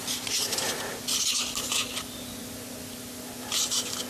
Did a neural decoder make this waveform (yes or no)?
no